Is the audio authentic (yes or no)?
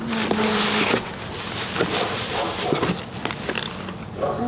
yes